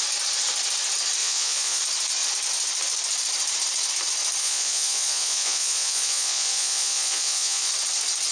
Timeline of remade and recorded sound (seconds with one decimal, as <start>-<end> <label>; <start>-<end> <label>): 0.0-1.2 recorded; 1.2-1.8 remade; 1.8-4.4 recorded; 4.4-7.7 remade; 7.7-8.3 recorded

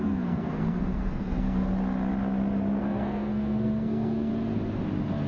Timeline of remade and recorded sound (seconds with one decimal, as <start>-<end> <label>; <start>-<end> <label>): 0.0-1.7 remade; 1.7-2.8 recorded; 2.8-4.3 remade; 4.3-5.3 recorded